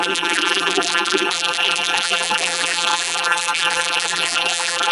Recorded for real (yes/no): no